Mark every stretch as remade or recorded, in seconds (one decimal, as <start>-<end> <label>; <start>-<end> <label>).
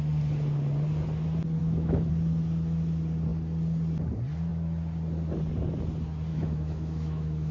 0.0-1.6 recorded; 1.6-2.1 remade; 2.1-6.3 recorded; 6.3-7.5 remade